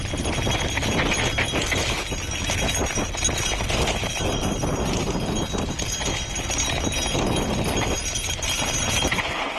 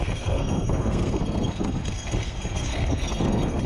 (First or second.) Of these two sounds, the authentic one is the first